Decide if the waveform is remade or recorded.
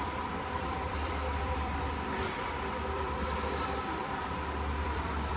remade